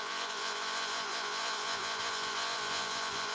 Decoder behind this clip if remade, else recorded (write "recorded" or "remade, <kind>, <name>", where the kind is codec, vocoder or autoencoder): remade, vocoder, Vocos